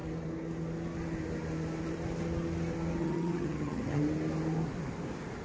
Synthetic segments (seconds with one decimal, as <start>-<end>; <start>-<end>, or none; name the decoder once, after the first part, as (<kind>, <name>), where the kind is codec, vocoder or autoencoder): 3.0-4.0 (vocoder, HiFi-GAN)